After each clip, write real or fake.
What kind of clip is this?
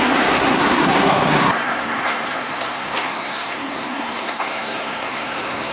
fake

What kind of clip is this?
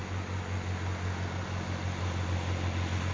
real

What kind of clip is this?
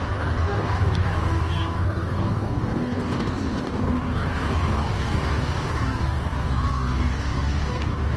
fake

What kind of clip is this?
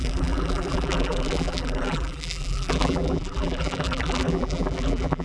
fake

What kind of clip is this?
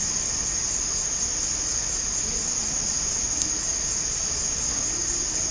real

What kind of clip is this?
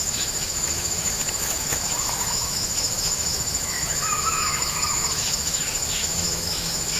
fake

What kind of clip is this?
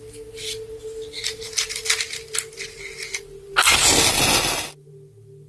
real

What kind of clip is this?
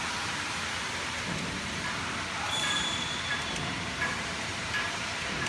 fake